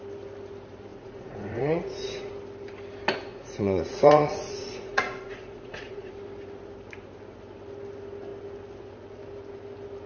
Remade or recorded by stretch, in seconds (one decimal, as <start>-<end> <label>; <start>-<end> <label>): 0.0-0.9 recorded; 0.9-2.3 remade; 2.3-3.3 recorded; 3.3-6.1 remade; 6.1-10.1 recorded